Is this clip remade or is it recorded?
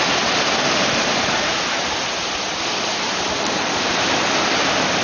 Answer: remade